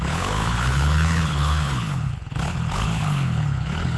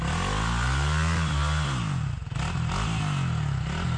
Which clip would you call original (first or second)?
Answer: second